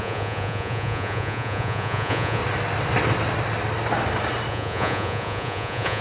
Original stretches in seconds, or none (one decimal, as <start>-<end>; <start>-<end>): 2.4-4.5

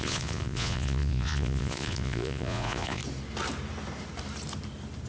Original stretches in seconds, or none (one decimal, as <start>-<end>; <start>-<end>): 3.0-5.1

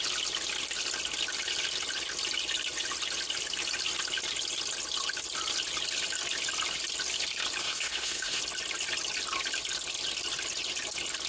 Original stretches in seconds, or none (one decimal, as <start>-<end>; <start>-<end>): 0.0-7.6; 8.4-11.3

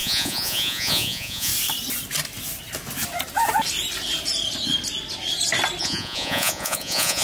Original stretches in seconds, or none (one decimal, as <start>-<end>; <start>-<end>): 1.5-5.8

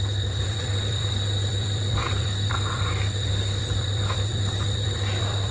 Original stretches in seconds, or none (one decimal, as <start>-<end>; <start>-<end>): none